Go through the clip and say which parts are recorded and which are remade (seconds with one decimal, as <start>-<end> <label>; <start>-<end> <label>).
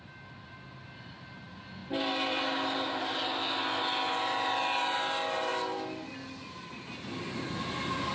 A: 0.0-8.1 recorded